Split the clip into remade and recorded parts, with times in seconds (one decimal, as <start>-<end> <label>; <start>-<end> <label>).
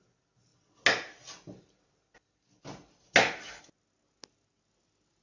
0.0-5.2 recorded